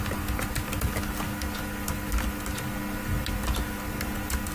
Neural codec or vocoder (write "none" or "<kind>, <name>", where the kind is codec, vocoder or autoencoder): none